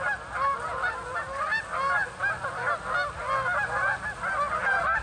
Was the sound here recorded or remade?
recorded